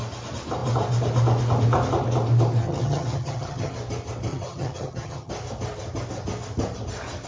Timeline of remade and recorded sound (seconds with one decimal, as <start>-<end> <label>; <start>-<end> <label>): 0.0-2.6 recorded; 2.6-3.7 remade; 3.7-4.3 recorded; 4.3-5.3 remade; 5.3-7.3 recorded